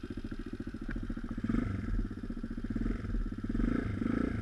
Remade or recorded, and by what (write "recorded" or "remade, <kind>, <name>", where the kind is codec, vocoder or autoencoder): recorded